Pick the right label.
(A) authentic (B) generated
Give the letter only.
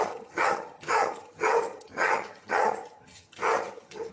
B